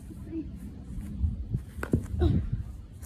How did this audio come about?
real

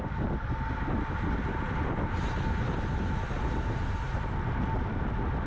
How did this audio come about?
real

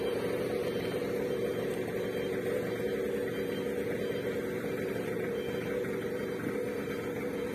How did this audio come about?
real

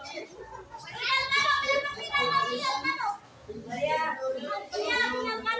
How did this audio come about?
real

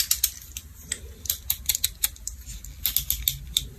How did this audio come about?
real